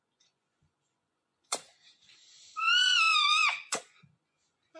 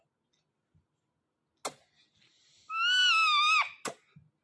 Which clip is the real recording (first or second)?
second